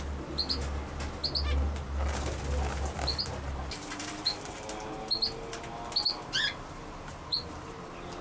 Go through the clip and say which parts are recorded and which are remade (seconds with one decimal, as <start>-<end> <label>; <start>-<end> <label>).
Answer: 0.0-8.2 recorded

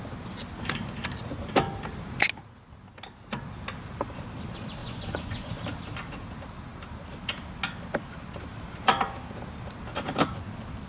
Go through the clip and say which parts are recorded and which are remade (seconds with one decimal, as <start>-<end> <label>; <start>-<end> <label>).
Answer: 0.0-4.8 recorded; 4.8-5.5 remade; 5.5-10.9 recorded